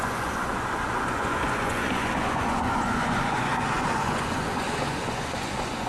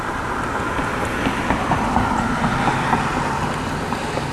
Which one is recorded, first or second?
second